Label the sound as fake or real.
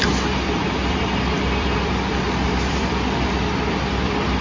fake